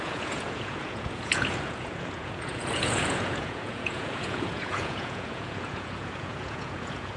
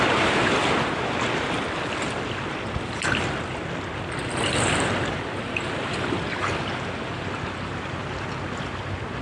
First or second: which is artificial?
first